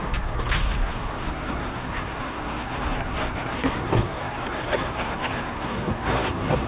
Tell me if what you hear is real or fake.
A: fake